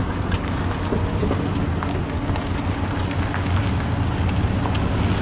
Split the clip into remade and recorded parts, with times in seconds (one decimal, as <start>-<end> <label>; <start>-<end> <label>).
0.0-5.2 recorded